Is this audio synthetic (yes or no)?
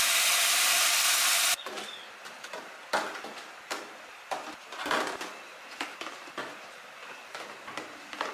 yes